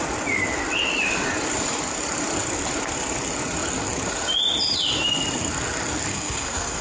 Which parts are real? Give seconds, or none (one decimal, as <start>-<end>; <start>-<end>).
0.0-6.1